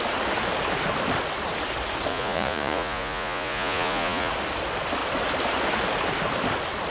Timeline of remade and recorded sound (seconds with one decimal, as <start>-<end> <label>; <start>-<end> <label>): 0.0-2.1 recorded; 2.1-4.3 remade; 4.3-6.9 recorded